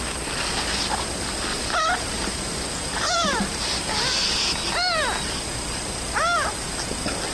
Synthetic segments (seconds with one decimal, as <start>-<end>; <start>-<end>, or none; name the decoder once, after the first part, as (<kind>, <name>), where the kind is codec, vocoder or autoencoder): 1.5-3.6 (vocoder, BigVGAN v2)